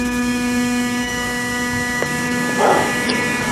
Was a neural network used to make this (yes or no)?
yes